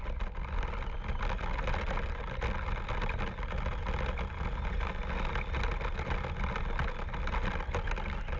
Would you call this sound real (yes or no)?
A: yes